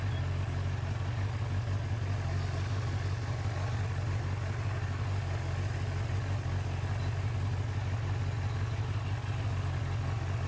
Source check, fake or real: real